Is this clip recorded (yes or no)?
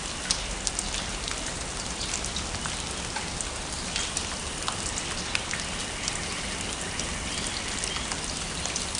yes